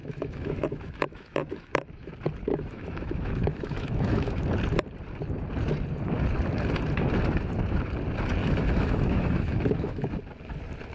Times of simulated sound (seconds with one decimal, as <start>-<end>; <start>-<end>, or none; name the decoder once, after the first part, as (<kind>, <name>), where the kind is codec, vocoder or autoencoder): 0.0-2.1 (autoencoder, DAC-VAE); 2.5-4.4; 8.4-10.2